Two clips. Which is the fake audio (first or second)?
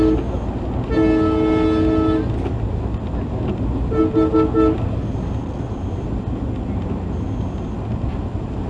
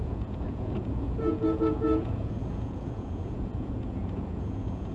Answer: second